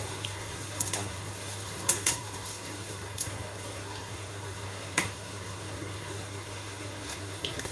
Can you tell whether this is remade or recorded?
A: remade